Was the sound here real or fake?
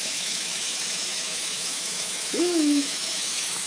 fake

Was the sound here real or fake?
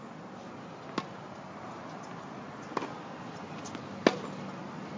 real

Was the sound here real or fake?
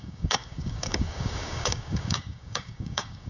fake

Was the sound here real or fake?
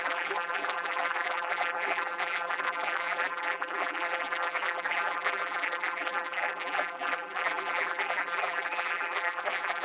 fake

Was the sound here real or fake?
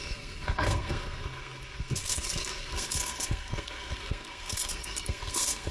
fake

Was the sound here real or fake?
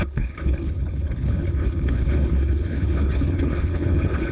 fake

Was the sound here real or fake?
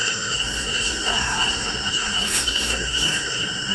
fake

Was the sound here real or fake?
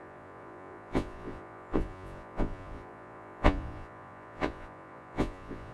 fake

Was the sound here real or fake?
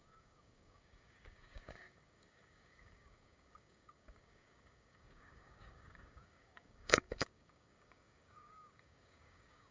fake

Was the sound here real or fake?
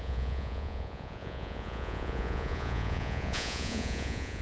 fake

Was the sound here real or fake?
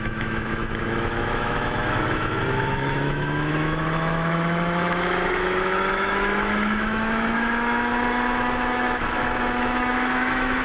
fake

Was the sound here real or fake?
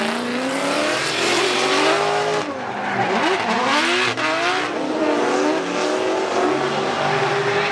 real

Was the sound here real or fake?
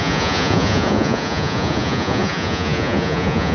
fake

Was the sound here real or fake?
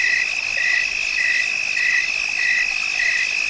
real